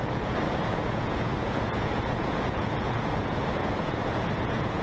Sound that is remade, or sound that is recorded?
remade